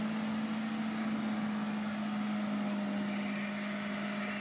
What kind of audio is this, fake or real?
real